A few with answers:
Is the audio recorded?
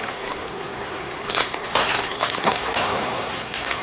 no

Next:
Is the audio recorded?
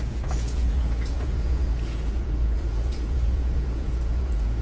no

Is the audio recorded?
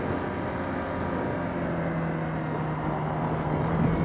yes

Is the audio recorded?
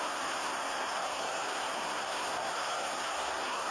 no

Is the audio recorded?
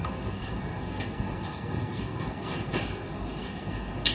no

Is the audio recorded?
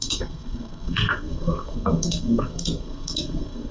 no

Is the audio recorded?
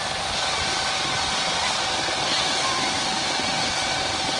no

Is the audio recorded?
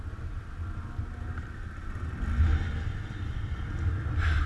yes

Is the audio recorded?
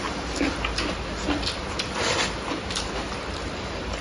yes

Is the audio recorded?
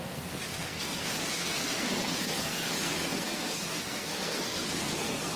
no